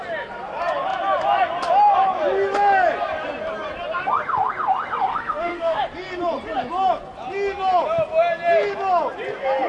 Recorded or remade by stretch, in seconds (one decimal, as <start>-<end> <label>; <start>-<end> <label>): 0.0-5.1 recorded; 5.1-5.8 remade; 5.8-9.7 recorded